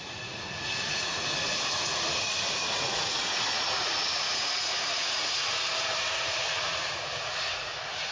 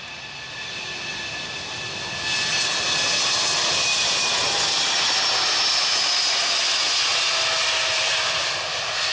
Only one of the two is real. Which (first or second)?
second